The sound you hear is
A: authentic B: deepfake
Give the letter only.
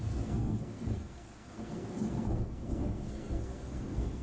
B